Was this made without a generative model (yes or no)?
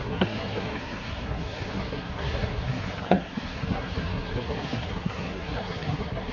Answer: no